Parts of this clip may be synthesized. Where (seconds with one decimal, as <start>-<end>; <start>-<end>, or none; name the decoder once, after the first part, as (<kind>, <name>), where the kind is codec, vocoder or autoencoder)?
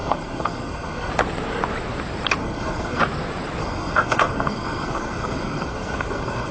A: 0.0-1.1 (codec, SNAC); 2.4-3.0; 3.6-6.5